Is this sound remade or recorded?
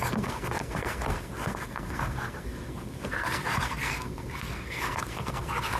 remade